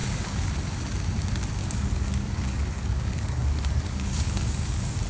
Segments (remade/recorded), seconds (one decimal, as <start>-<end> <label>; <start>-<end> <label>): 0.0-0.5 remade; 0.5-1.6 recorded; 1.6-5.1 remade

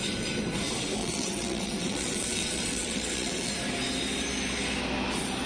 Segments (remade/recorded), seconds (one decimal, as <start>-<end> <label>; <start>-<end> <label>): 0.0-1.0 recorded; 1.0-3.5 remade; 3.5-5.5 recorded

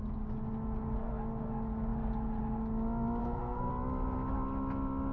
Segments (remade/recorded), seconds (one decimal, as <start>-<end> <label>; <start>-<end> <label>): 0.0-3.2 recorded; 3.2-3.7 remade; 3.7-5.1 recorded

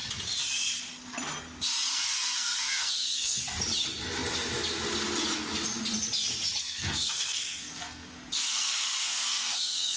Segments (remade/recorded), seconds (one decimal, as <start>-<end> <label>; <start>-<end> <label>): 0.0-1.9 recorded; 1.9-3.4 remade; 3.4-6.6 recorded; 6.6-10.0 remade